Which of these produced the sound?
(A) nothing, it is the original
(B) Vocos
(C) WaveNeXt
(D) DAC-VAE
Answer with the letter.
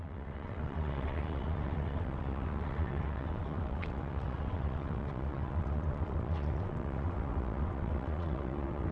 C